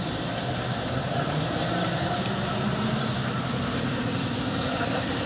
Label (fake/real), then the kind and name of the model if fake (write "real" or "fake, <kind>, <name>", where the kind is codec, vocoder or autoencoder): fake, vocoder, BigVGAN v2